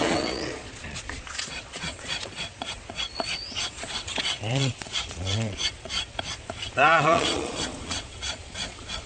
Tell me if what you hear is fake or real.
fake